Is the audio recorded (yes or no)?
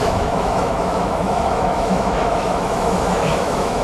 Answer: no